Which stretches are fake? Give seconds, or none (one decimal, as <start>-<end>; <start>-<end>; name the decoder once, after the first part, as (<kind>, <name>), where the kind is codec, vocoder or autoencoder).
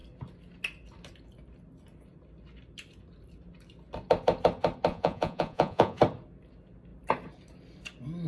4.9-6.0 (vocoder, Vocos)